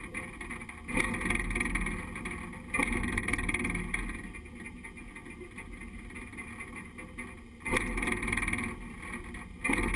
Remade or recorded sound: recorded